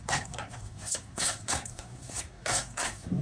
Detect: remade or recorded remade